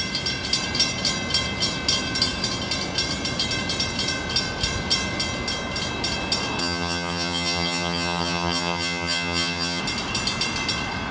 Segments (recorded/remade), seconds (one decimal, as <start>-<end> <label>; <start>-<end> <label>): 0.0-6.6 recorded; 6.6-9.8 remade; 9.8-11.1 recorded